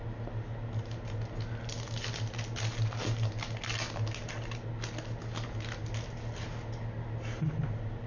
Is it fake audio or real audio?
real